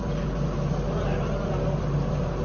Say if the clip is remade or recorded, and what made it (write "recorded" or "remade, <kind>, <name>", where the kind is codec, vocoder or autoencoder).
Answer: recorded